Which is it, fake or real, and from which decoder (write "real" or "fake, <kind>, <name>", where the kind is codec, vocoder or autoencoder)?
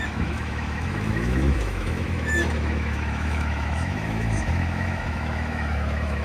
fake, autoencoder, DAC-VAE